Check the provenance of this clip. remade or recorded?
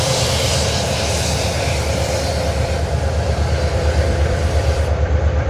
remade